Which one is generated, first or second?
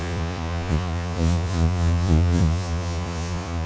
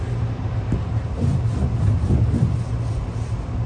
first